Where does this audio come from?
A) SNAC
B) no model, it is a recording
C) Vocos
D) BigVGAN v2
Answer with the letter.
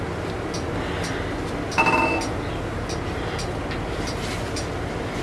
B